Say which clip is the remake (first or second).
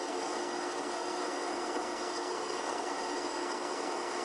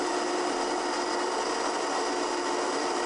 first